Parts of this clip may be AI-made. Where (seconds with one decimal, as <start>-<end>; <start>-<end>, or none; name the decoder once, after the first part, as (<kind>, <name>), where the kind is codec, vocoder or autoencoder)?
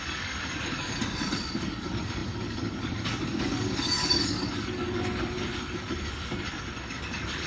0.0-7.5 (codec, DAC)